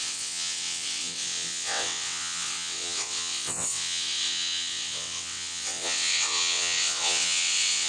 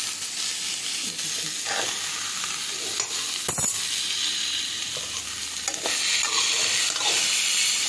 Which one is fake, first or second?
first